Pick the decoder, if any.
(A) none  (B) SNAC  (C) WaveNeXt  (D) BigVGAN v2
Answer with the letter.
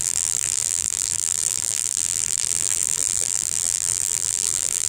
D